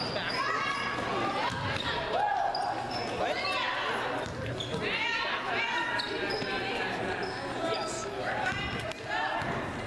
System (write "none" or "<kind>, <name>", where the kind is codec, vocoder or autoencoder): none